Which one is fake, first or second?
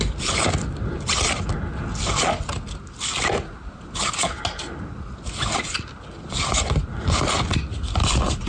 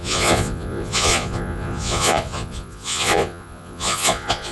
second